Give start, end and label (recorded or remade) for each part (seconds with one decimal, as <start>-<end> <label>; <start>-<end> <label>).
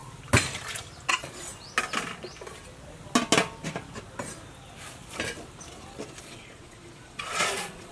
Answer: 0.0-1.1 recorded; 1.1-1.5 remade; 1.5-6.2 recorded; 6.2-7.9 remade